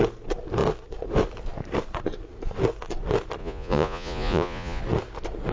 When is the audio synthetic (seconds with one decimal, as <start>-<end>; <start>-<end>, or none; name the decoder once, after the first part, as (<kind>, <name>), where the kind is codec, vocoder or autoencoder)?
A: 3.4-4.8 (vocoder, Vocos)